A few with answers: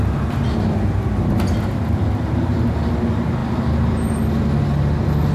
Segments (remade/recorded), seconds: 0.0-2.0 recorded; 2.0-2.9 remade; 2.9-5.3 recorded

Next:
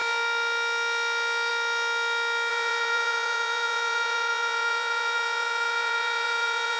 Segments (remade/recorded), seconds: 0.0-2.5 recorded; 2.5-6.8 remade

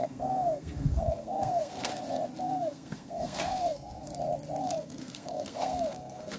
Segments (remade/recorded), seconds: 0.0-1.9 remade; 1.9-2.4 recorded; 2.4-4.1 remade; 4.1-4.6 recorded; 4.6-6.4 remade